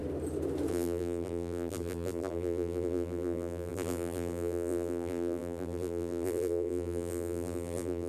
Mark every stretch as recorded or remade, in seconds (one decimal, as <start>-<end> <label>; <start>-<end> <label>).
0.0-0.7 recorded; 0.7-8.1 remade